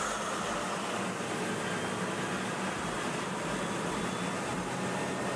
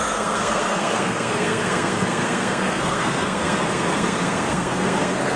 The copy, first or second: second